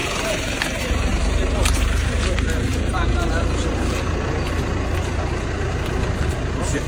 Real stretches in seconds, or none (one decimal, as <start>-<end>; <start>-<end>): 2.3-2.7; 3.3-6.9